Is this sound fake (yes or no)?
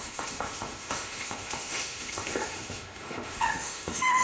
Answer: yes